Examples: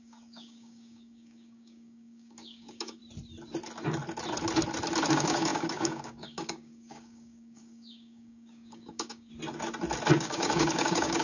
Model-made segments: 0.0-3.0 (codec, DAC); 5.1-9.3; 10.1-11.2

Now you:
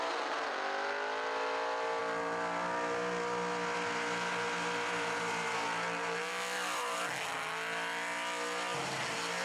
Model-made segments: none

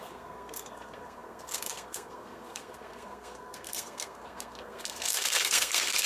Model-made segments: 0.0-6.1 (codec, SNAC)

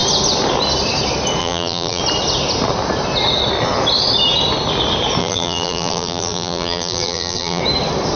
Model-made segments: 1.4-2.0 (vocoder, BigVGAN v2); 5.2-7.6

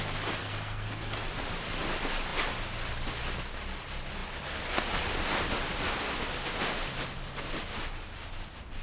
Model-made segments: 0.4-1.3 (codec, SNAC)

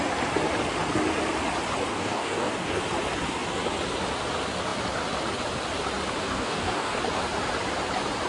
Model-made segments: 1.9-2.8 (codec, DAC); 6.2-7.0

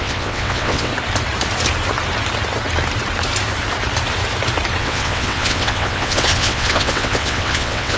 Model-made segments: 0.0-0.9 (vocoder, WaveNeXt); 4.8-8.0